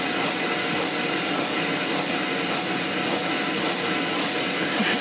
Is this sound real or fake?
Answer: real